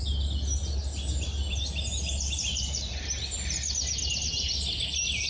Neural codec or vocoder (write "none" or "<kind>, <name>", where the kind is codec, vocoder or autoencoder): none